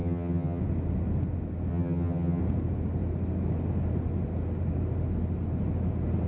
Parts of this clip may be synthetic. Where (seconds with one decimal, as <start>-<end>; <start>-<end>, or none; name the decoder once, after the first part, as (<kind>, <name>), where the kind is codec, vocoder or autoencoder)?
0.0-0.6 (vocoder, HiFi-GAN); 1.7-2.4